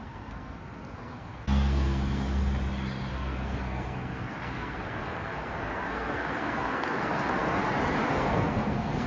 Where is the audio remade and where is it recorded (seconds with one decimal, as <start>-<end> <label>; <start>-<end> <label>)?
0.0-2.4 remade; 2.4-3.1 recorded; 3.1-7.6 remade; 7.6-8.1 recorded; 8.1-9.1 remade